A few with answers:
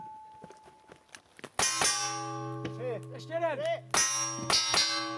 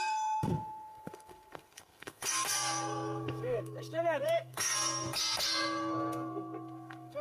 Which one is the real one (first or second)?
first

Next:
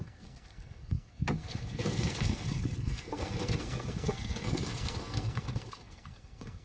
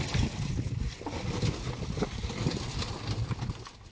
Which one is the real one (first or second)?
second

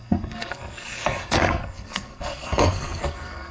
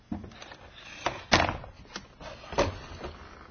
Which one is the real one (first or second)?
second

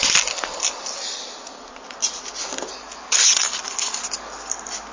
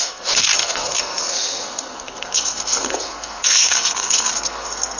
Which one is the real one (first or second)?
first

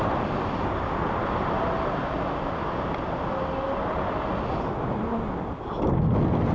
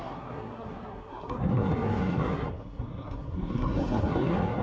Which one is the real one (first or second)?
first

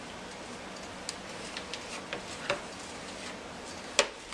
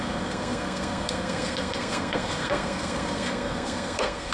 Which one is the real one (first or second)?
first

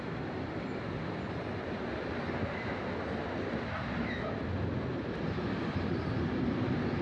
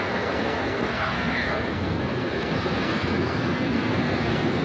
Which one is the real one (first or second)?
first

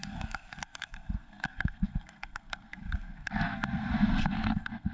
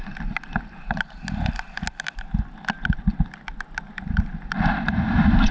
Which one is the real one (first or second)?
second